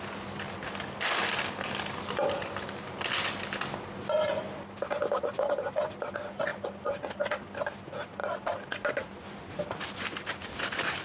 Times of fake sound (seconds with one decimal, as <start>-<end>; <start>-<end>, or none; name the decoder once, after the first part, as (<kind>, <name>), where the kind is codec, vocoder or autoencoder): none